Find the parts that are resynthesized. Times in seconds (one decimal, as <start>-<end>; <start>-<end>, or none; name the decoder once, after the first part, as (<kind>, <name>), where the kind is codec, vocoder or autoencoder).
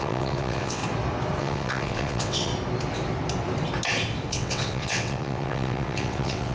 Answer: 0.0-0.8 (vocoder, WaveNeXt); 1.4-2.5; 4.3-6.5